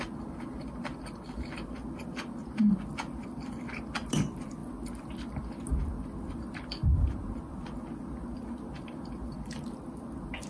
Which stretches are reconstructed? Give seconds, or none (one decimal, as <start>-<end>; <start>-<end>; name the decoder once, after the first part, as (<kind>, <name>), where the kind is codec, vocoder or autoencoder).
none